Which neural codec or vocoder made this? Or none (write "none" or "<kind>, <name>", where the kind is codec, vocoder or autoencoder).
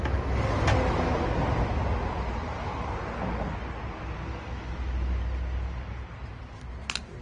none